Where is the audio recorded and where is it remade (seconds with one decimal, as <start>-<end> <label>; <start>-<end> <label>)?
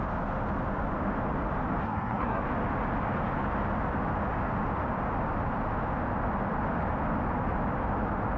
0.0-1.8 recorded; 1.8-2.4 remade; 2.4-8.4 recorded